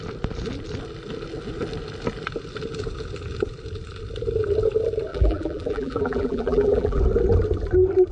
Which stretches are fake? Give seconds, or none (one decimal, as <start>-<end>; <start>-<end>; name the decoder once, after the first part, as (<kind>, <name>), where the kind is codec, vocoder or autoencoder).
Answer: 5.1-7.0 (vocoder, BigVGAN v2)

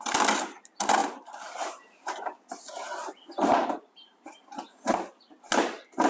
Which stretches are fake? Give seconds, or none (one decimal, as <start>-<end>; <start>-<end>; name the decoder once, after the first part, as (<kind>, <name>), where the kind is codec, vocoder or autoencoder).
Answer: 1.0-2.5 (vocoder, BigVGAN v2); 3.6-5.0

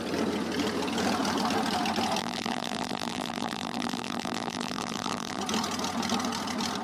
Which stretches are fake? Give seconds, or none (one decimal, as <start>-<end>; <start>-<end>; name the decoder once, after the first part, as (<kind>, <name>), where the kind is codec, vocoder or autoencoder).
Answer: 2.2-5.4 (vocoder, BigVGAN v2)

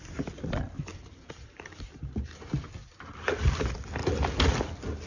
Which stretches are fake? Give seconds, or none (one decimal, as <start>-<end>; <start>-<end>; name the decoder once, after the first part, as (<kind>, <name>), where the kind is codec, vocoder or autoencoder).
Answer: 0.9-2.5 (vocoder, BigVGAN v2)

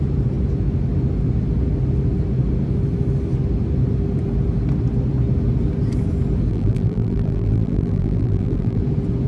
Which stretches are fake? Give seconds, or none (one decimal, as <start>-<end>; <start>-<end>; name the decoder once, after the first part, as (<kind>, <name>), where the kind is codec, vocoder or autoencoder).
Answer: 6.5-8.8 (vocoder, BigVGAN v2)

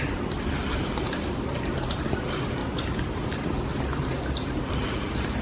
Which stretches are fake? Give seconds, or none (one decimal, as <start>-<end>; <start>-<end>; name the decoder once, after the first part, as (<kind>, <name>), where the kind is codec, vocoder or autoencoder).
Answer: 0.0-2.6 (vocoder, BigVGAN v2); 4.7-5.4